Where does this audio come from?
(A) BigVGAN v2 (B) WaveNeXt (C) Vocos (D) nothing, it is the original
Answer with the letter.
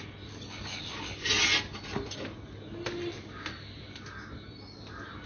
D